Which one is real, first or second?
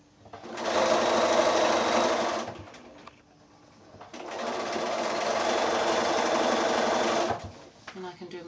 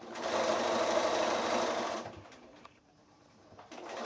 first